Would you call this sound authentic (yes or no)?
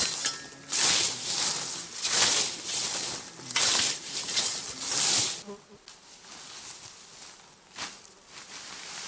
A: yes